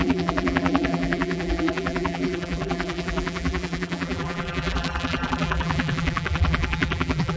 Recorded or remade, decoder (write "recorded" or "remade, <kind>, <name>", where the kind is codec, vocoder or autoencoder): remade, vocoder, BigVGAN v2